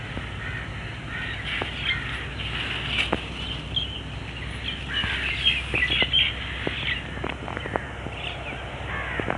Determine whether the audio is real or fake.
real